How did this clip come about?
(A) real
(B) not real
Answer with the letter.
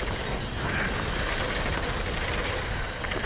A